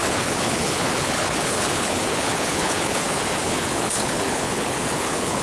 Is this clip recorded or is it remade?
remade